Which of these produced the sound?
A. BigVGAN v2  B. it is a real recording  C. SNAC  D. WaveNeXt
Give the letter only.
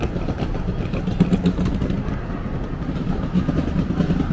B